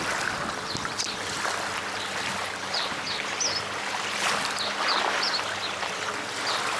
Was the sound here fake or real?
real